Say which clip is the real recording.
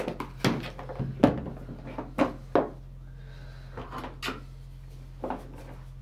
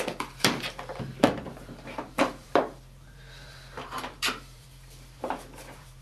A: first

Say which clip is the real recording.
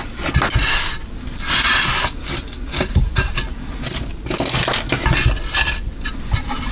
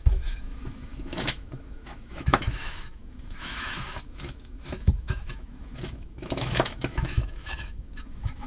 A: first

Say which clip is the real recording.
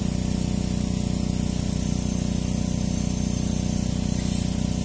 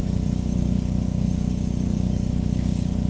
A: first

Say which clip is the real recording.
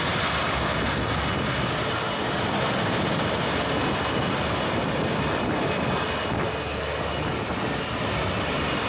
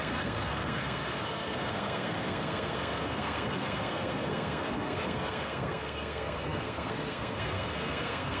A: first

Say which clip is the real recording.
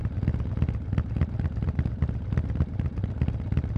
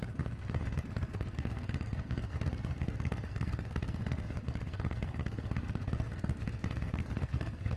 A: first